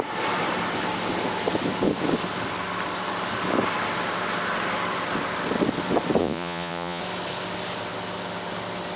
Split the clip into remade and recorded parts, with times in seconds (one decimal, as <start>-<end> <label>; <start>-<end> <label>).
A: 0.0-6.2 recorded; 6.2-7.0 remade; 7.0-9.0 recorded